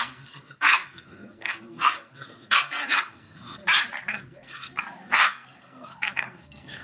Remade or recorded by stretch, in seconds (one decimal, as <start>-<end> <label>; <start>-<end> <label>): 0.0-3.6 remade; 3.6-4.1 recorded; 4.1-6.8 remade